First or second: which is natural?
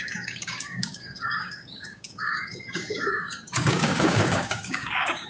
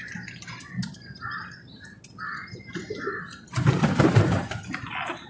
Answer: second